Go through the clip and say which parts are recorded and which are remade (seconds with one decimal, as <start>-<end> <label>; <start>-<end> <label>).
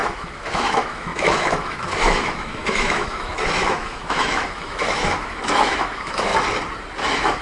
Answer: 0.0-6.3 remade; 6.3-7.0 recorded; 7.0-7.4 remade